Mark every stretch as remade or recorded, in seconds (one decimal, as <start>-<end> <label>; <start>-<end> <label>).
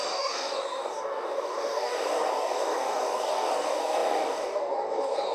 0.0-5.3 remade